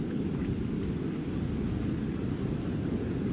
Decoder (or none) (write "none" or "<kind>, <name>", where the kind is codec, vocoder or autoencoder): none